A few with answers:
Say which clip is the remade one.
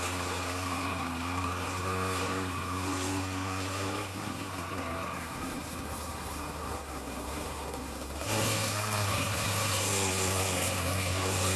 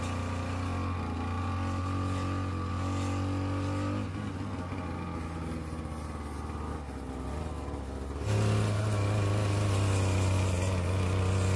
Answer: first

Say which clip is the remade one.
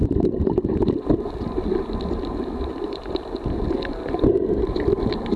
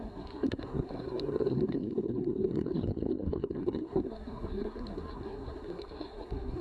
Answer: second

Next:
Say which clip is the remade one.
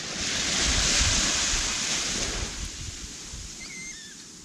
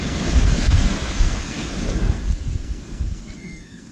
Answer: second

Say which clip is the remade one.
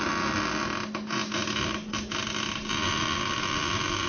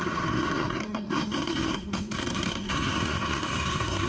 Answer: second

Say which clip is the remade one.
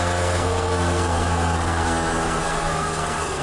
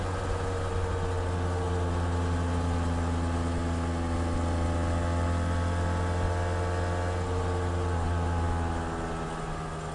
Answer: first